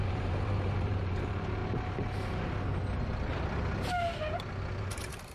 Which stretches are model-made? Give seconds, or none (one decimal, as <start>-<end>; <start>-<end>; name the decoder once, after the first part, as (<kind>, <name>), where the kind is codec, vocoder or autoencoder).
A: 0.0-1.6 (vocoder, BigVGAN v2); 4.8-5.3